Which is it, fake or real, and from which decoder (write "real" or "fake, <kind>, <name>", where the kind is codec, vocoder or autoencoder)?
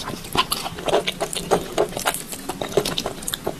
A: real